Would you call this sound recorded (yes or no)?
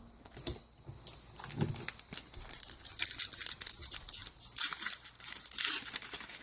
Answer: yes